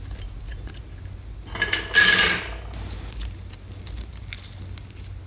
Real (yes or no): yes